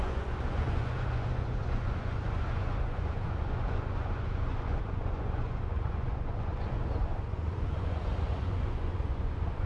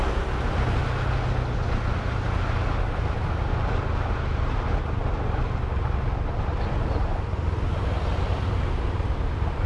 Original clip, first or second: second